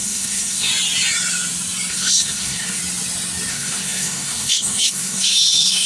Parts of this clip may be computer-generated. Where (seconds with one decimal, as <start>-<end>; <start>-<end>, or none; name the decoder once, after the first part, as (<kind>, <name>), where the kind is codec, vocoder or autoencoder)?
0.0-0.7 (codec, SNAC); 1.9-2.8; 3.5-5.9